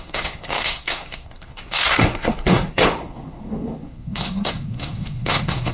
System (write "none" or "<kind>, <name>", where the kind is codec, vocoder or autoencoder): codec, SNAC